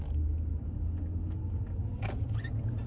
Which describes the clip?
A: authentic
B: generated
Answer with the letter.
A